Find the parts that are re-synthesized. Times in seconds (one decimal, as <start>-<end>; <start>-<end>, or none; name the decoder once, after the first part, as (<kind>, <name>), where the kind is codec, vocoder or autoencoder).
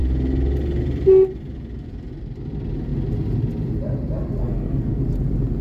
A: 4.4-5.0 (codec, SNAC)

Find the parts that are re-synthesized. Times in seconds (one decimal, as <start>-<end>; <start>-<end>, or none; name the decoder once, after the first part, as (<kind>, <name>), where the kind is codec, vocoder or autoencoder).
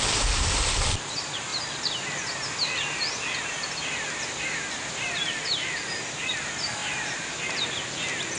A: none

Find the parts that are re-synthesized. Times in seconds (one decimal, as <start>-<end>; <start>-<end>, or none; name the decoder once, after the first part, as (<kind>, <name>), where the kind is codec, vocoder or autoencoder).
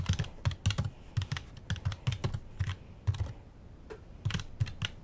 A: none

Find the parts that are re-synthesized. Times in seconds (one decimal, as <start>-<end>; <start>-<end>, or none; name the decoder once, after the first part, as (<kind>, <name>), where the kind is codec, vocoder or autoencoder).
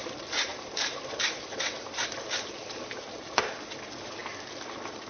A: 0.5-3.6 (vocoder, BigVGAN v2)